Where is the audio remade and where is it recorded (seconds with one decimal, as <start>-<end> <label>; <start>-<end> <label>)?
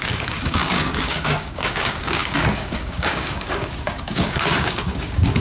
0.0-5.4 remade